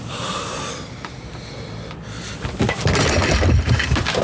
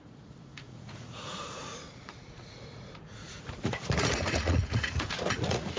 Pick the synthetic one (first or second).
second